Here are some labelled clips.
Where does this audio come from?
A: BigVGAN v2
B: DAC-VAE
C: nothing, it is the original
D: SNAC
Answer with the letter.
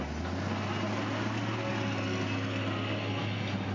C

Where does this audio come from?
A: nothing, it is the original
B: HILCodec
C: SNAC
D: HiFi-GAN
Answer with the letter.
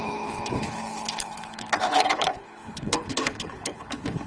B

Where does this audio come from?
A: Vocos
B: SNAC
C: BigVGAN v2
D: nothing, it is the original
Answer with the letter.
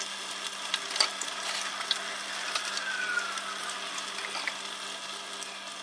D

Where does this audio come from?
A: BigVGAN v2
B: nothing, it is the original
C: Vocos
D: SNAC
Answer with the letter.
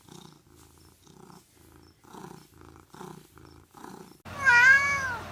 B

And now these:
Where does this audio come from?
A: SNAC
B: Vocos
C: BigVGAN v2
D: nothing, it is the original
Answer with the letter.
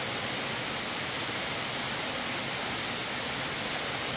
D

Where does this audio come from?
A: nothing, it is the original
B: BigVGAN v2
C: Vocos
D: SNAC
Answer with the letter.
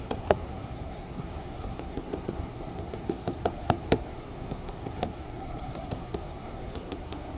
D